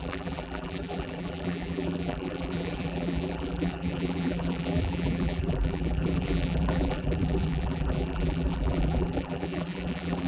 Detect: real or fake fake